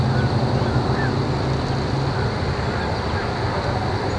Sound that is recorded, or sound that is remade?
recorded